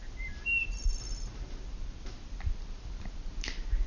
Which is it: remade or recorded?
recorded